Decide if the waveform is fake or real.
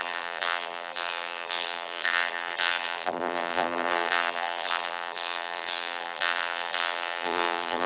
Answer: fake